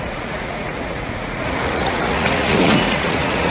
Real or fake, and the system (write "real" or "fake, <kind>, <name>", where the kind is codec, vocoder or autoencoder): fake, vocoder, Vocos